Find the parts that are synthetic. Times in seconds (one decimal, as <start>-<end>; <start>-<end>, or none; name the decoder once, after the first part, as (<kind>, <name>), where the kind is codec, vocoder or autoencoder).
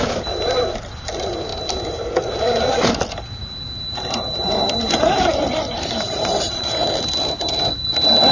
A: 3.4-6.7 (vocoder, BigVGAN v2)